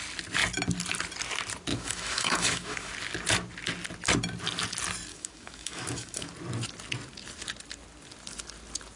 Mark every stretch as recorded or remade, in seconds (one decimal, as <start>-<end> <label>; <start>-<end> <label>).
0.0-1.7 recorded; 1.7-2.9 remade; 2.9-5.1 recorded; 5.1-6.3 remade; 6.3-9.0 recorded